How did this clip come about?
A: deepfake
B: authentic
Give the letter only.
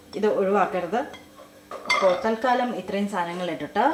A